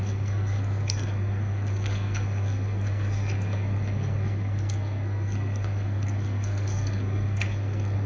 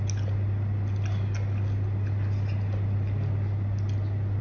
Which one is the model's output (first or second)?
first